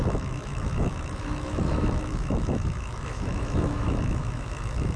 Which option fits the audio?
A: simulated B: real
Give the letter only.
A